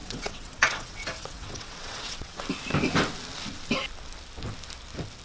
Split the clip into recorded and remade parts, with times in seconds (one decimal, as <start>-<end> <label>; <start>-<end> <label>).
0.0-2.4 remade; 2.4-5.2 recorded